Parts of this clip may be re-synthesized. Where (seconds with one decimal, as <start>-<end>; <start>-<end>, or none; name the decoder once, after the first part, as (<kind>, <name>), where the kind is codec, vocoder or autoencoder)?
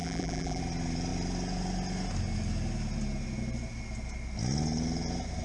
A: 0.0-0.6 (vocoder, BigVGAN v2)